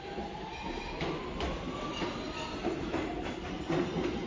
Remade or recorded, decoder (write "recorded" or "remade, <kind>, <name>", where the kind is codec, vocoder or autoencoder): recorded